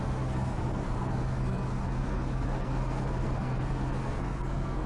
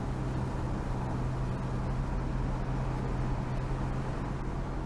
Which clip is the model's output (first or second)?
first